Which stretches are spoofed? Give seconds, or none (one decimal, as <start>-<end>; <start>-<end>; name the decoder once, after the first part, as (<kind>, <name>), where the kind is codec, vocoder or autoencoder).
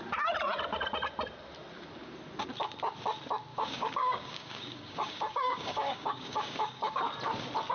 3.5-7.0 (codec, DAC)